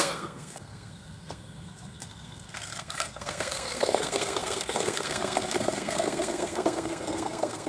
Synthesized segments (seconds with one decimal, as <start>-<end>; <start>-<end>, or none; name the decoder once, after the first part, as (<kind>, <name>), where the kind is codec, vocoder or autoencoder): 0.0-7.7 (codec, SNAC)